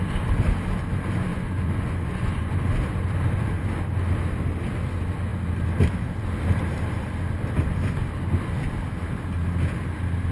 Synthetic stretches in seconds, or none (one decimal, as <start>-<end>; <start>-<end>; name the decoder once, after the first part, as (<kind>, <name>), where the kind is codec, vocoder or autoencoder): 1.3-2.5 (vocoder, Vocos)